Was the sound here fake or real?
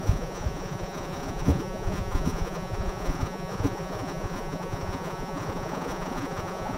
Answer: fake